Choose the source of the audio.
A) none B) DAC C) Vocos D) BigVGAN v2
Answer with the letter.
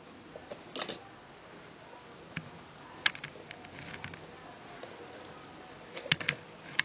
A